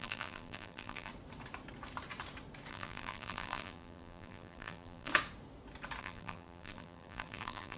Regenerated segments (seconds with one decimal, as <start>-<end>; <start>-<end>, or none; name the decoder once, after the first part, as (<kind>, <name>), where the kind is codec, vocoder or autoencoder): 0.0-1.1 (vocoder, BigVGAN v2); 2.7-5.1; 6.0-7.8